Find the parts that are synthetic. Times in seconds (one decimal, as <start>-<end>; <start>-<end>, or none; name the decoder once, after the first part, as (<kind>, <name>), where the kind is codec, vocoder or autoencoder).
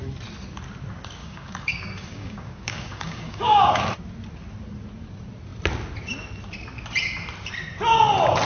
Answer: 1.2-3.8 (codec, DAC)